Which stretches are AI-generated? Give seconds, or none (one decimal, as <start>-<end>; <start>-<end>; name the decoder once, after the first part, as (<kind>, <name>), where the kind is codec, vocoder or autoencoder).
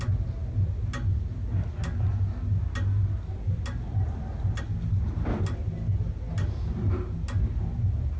none